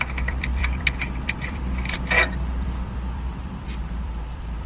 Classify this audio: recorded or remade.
remade